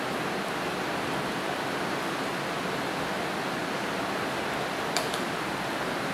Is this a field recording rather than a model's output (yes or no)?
yes